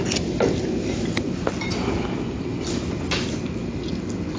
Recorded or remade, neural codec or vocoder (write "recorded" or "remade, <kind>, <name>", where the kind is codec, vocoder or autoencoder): recorded